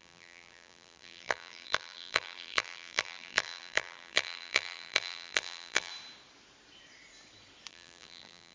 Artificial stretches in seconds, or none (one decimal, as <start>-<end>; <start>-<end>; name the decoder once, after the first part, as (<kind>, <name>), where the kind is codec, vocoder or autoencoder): 0.0-5.9 (vocoder, BigVGAN v2); 7.7-8.5